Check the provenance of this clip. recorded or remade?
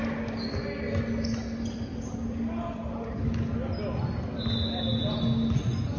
recorded